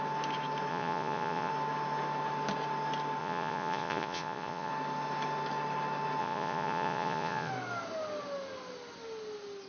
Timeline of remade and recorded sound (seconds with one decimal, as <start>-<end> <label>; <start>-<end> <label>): 0.0-0.7 recorded; 0.7-1.5 remade; 1.5-3.2 recorded; 3.2-4.7 remade; 4.7-6.2 recorded; 6.2-7.5 remade; 7.5-9.7 recorded

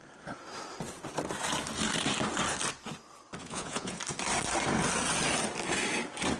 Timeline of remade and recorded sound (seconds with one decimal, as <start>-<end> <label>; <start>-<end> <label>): 0.0-3.4 recorded; 3.4-4.0 remade; 4.0-6.4 recorded

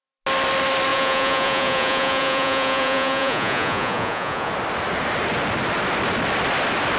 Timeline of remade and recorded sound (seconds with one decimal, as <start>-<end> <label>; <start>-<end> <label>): 0.0-0.9 recorded; 0.9-4.5 remade; 4.5-7.0 recorded

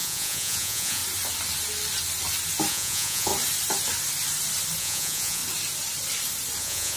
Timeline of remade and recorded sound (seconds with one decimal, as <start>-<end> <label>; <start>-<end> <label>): 0.0-1.0 remade; 1.0-2.7 recorded; 2.7-3.3 remade; 3.3-4.8 recorded; 4.8-5.4 remade; 5.4-6.6 recorded; 6.6-7.0 remade

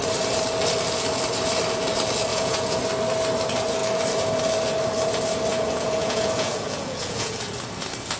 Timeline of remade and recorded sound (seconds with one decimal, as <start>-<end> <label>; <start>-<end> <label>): 0.0-2.3 recorded; 2.3-2.8 remade; 2.8-5.5 recorded; 5.5-7.3 remade; 7.3-8.2 recorded

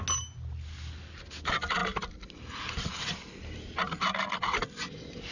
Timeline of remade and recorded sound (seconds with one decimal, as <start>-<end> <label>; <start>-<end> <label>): 0.0-5.3 recorded